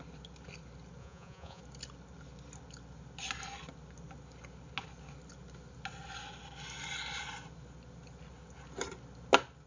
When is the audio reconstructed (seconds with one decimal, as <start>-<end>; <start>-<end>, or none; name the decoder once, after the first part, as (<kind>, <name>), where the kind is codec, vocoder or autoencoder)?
1.0-1.6 (vocoder, Vocos)